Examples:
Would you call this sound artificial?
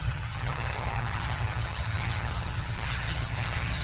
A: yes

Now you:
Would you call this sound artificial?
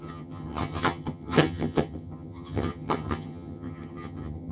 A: yes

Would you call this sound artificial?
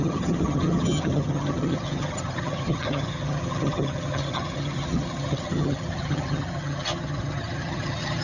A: yes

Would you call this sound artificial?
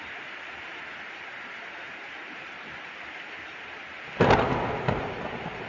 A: no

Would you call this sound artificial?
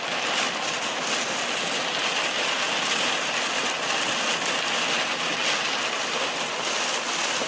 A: no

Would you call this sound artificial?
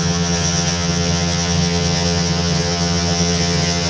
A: yes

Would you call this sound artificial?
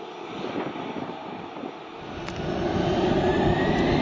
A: no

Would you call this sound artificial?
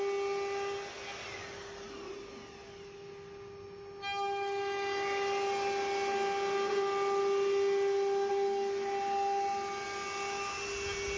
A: no